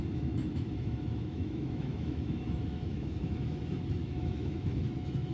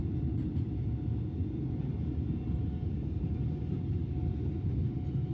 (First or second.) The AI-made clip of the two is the first